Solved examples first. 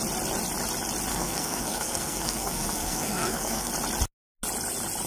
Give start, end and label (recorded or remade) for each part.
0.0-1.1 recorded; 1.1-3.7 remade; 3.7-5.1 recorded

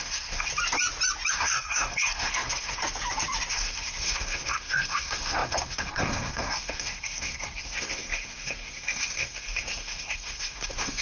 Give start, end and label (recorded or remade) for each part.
0.0-0.5 remade; 0.5-1.3 recorded; 1.3-2.8 remade; 2.8-3.5 recorded; 3.5-11.0 remade

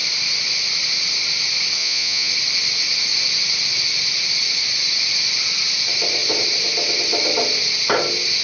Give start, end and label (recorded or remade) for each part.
0.0-1.8 recorded; 1.8-2.3 remade; 2.3-8.4 recorded

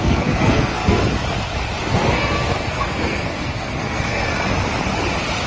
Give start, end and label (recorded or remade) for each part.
0.0-1.0 remade; 1.0-1.9 recorded; 1.9-4.3 remade; 4.3-5.5 recorded